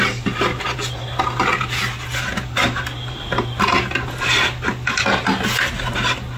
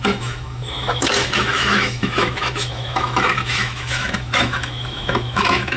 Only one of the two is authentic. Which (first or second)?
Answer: first